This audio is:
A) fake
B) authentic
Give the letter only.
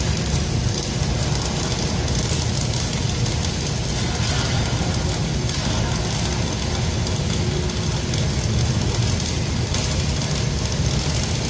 B